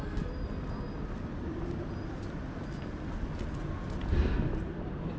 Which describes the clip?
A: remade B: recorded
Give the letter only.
B